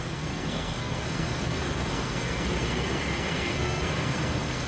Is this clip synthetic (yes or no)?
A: yes